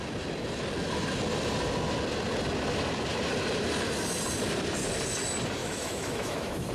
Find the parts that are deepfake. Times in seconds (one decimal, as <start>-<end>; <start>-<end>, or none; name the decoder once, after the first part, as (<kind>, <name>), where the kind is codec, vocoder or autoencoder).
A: 5.6-6.7 (autoencoder, DAC-VAE)